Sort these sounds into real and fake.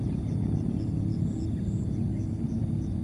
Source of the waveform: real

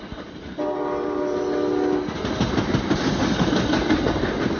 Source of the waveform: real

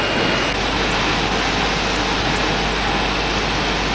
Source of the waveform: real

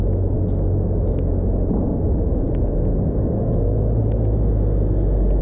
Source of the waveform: real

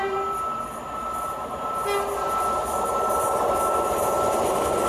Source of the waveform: real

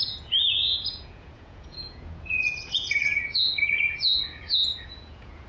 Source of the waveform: fake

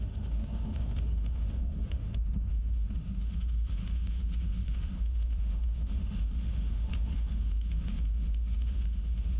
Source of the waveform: fake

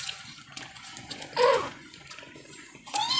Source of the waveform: fake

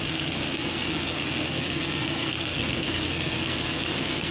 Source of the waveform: fake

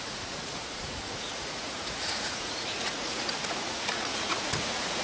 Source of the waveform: fake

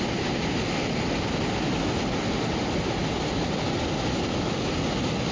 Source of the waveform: real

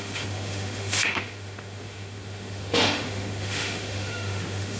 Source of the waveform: fake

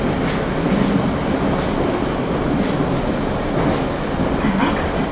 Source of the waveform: real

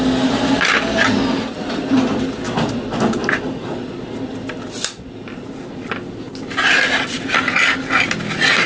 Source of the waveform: real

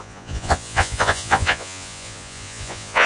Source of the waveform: fake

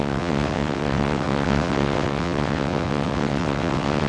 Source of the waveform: fake